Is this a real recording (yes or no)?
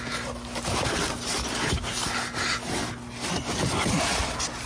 yes